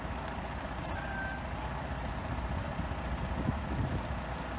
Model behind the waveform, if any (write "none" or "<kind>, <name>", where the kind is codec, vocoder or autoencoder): none